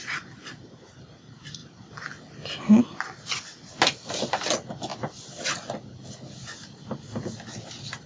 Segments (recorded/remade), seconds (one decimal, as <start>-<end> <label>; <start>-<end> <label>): 0.0-8.1 recorded